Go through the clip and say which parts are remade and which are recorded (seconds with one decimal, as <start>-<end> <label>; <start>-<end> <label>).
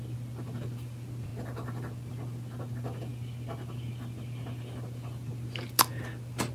0.0-6.5 recorded